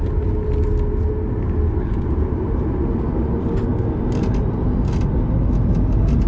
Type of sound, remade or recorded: recorded